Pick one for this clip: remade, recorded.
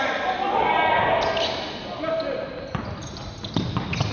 recorded